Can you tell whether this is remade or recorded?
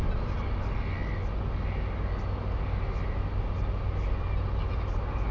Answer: recorded